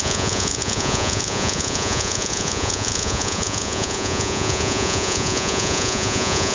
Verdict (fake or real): fake